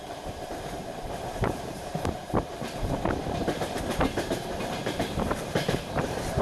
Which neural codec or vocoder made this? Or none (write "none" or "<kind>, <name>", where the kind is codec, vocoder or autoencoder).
vocoder, BigVGAN v2